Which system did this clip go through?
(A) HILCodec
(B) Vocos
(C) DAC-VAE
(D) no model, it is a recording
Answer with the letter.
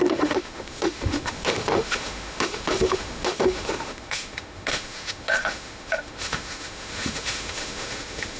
C